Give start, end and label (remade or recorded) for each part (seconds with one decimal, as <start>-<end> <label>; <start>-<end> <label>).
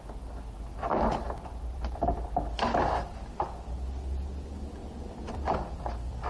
0.0-6.3 recorded